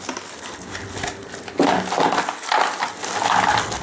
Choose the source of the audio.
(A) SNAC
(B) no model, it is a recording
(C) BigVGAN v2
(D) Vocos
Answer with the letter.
B